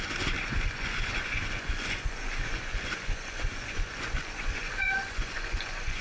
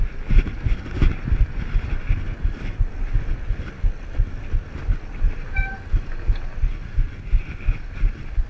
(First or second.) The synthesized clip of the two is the first